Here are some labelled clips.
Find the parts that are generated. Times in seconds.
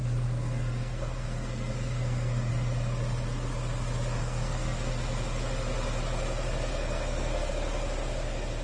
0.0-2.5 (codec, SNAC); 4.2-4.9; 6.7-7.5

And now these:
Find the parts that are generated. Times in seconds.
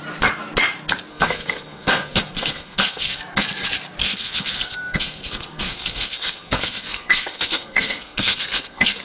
1.1-3.2 (codec, SNAC); 4.0-9.0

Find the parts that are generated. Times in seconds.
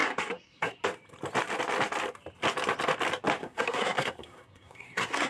0.0-0.8 (codec, SNAC); 3.4-5.3